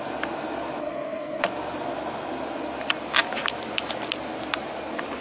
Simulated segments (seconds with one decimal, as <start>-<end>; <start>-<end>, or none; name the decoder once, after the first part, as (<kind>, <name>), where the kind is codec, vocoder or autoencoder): 0.8-1.4 (codec, SNAC)